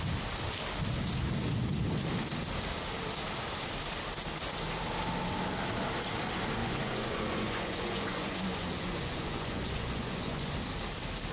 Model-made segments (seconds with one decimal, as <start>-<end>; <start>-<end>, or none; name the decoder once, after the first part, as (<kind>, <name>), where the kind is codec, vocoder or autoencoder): 6.6-10.5 (vocoder, Vocos)